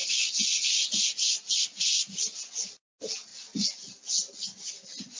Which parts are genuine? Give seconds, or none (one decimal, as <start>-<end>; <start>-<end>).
0.0-5.2